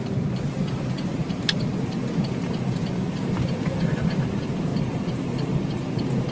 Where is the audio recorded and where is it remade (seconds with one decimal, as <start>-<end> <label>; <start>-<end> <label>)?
0.0-6.3 recorded